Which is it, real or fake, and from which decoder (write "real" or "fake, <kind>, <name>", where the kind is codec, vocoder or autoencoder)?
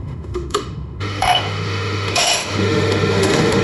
fake, autoencoder, DAC-VAE